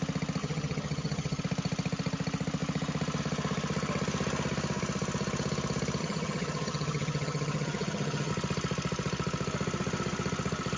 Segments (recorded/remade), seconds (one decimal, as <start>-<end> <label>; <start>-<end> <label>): 0.0-0.4 recorded; 0.4-1.4 remade; 1.4-6.0 recorded; 6.0-8.3 remade; 8.3-10.8 recorded